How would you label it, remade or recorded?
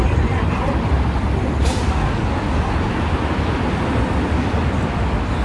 recorded